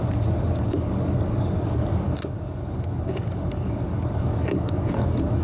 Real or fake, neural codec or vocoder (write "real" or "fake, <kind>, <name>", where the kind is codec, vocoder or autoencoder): fake, codec, DAC